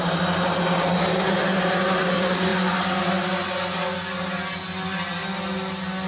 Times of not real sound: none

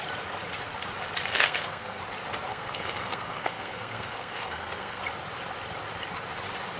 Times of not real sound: 1.3-2.0 (codec, SNAC); 2.5-5.0

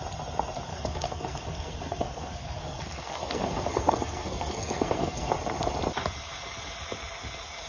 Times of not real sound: 0.7-5.3 (codec, SNAC)

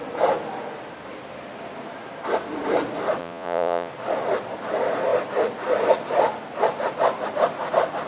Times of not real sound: 3.2-3.9 (vocoder, Vocos)

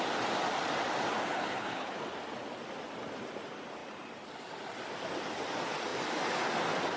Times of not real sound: 1.3-2.0 (codec, HILCodec)

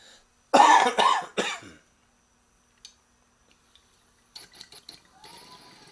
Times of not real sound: none